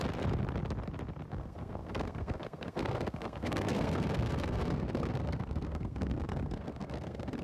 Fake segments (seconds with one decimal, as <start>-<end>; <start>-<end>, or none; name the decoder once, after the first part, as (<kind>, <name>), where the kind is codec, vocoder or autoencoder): 1.3-7.4 (codec, SNAC)